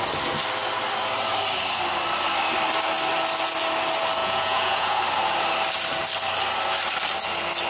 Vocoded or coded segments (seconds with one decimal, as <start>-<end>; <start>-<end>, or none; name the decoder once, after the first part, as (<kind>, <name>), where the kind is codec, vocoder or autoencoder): 4.2-5.0 (vocoder, Vocos)